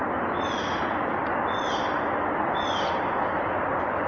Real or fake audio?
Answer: real